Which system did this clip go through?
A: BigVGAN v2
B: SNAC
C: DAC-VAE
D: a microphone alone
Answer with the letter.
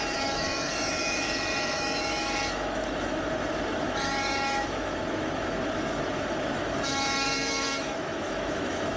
C